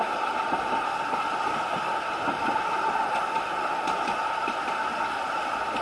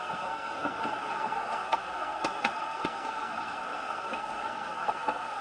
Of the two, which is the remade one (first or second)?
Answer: second